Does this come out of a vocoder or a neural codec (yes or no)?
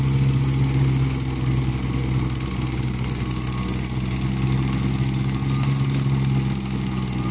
no